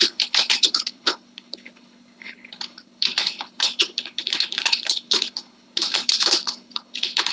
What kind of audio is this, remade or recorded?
remade